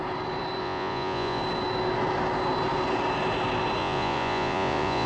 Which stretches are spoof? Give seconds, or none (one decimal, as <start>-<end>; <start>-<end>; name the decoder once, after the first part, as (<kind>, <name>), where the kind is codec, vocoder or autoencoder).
0.6-1.4 (vocoder, Vocos); 3.8-5.1